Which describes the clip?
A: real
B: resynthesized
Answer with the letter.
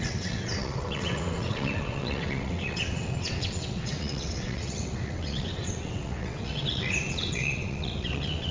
B